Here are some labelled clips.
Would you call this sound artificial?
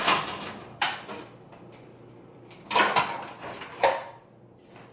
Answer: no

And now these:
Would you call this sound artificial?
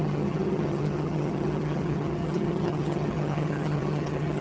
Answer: yes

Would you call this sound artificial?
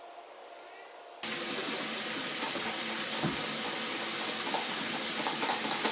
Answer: no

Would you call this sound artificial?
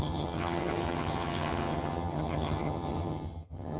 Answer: yes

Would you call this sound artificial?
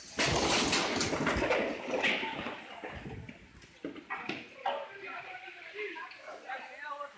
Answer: no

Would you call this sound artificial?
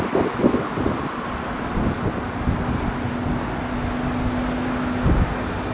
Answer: no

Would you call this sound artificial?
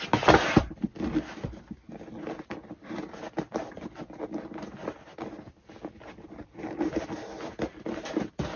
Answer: no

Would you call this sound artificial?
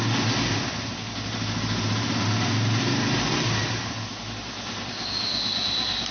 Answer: no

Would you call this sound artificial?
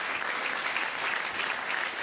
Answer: no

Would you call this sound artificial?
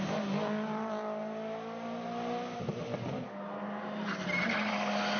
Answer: no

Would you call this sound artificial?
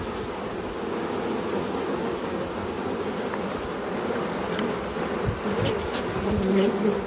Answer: no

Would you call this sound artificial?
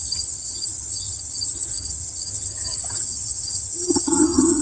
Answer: yes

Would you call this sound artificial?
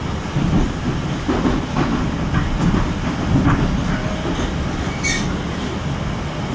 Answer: no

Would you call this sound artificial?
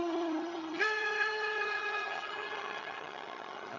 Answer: yes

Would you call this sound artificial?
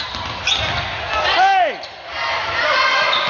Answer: no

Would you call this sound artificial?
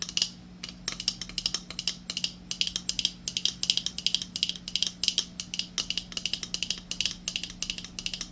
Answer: no